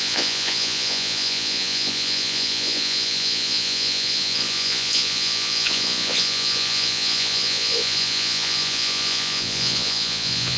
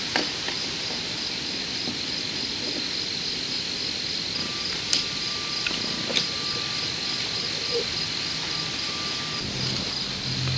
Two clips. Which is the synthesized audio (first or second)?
first